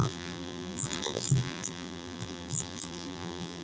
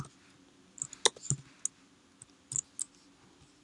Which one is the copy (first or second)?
first